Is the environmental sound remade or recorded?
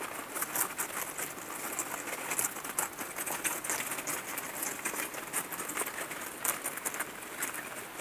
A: recorded